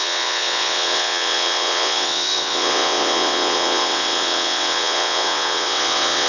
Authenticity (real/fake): fake